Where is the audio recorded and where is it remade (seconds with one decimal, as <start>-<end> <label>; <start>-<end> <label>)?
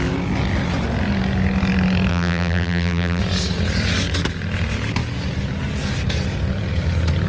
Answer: 0.0-2.1 recorded; 2.1-3.2 remade; 3.2-7.3 recorded